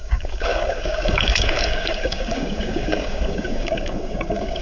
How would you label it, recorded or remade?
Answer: remade